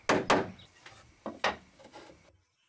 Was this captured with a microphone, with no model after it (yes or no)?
yes